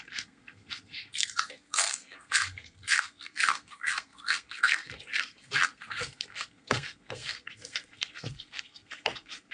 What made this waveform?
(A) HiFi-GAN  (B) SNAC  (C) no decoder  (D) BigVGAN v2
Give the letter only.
B